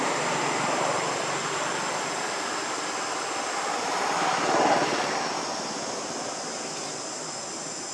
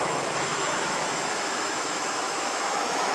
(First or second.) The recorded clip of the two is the first